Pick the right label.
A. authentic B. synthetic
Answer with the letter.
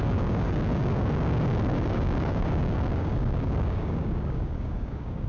B